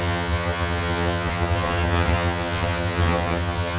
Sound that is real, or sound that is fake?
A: fake